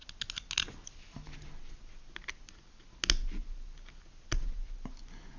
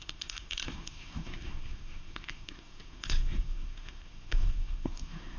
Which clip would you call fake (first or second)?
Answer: second